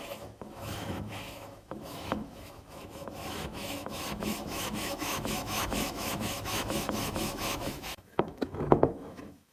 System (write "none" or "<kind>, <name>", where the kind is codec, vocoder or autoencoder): autoencoder, DAC-VAE